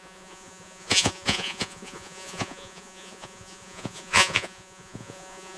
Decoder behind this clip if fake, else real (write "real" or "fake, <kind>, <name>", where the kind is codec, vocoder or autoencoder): fake, vocoder, Vocos